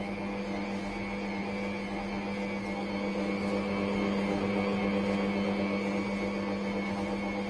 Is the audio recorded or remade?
recorded